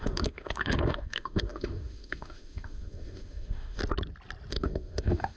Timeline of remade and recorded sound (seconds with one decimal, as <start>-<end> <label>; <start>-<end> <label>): 0.0-3.8 remade; 3.8-4.5 recorded; 4.5-5.4 remade